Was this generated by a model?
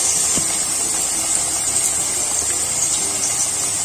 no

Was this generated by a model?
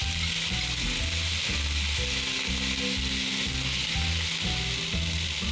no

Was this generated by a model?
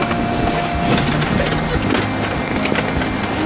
no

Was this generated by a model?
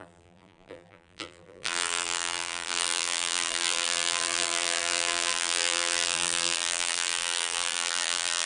yes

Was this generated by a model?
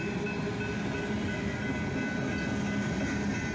no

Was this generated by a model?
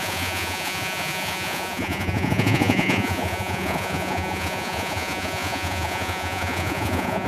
yes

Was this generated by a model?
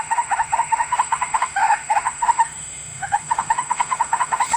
yes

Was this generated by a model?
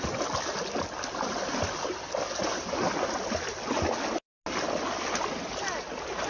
no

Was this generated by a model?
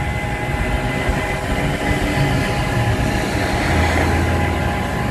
no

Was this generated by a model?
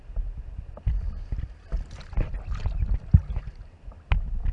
no